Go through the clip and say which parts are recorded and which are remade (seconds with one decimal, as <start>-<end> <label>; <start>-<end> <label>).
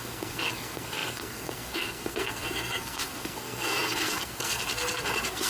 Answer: 0.0-5.5 remade